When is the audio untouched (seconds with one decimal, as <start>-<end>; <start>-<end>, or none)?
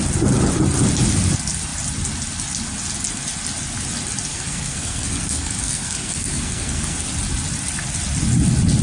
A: 0.0-4.3; 7.0-8.8